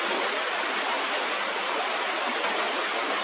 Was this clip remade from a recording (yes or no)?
no